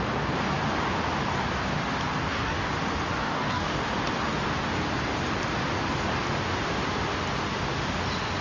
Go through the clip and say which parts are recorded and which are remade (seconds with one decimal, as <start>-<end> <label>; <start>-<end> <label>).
0.0-2.2 recorded; 2.2-2.7 remade; 2.7-3.2 recorded; 3.2-3.8 remade; 3.8-8.4 recorded

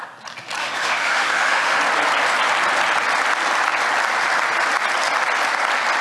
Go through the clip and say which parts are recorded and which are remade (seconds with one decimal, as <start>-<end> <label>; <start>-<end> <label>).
0.0-0.6 recorded; 0.6-1.8 remade; 1.8-6.0 recorded

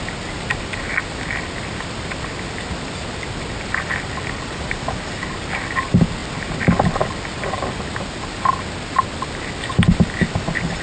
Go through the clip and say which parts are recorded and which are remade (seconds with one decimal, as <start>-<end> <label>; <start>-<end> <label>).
0.0-10.8 recorded

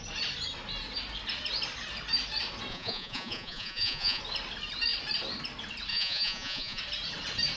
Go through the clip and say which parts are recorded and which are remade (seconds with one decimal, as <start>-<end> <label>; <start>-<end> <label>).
0.0-2.7 recorded; 2.7-4.2 remade; 4.2-5.9 recorded; 5.9-6.8 remade; 6.8-7.6 recorded